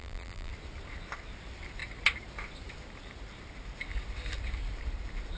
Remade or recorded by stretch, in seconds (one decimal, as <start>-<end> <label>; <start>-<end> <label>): 0.0-0.5 remade; 0.5-5.4 recorded